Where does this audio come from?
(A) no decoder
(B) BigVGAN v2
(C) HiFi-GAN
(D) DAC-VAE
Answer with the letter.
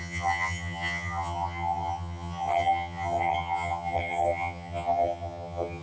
C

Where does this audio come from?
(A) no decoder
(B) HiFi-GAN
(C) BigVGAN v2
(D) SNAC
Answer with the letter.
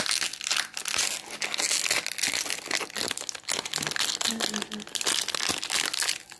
A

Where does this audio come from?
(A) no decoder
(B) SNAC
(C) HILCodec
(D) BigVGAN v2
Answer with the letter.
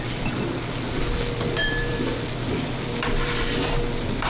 D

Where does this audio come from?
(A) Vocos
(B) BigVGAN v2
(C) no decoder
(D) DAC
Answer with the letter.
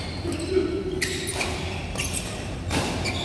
B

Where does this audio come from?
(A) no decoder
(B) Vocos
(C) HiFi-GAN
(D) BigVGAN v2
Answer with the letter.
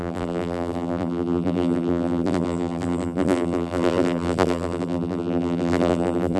D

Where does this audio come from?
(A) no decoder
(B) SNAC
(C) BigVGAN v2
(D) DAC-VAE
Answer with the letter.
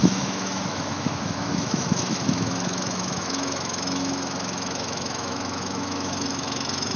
D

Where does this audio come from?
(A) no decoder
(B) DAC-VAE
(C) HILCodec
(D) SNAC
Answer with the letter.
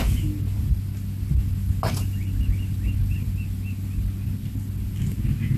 A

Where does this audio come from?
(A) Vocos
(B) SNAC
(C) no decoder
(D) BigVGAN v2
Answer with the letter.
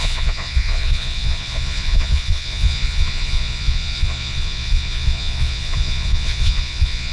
A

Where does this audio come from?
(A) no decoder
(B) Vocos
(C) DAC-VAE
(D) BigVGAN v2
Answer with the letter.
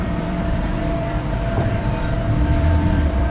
D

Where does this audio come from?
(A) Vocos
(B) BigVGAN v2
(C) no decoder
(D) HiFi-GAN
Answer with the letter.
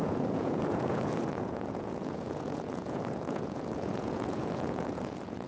A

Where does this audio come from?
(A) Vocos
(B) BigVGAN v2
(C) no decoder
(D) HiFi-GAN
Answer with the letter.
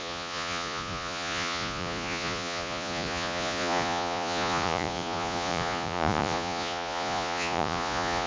A